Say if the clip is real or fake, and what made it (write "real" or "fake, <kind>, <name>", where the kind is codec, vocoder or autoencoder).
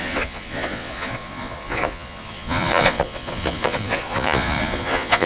fake, vocoder, Vocos